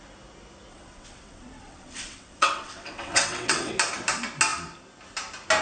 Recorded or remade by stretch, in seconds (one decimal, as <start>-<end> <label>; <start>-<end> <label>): 0.0-0.7 recorded; 0.7-3.7 remade; 3.7-5.6 recorded